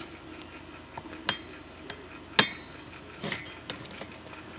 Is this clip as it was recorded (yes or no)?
yes